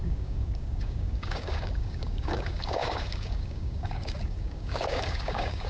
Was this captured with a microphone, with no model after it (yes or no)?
no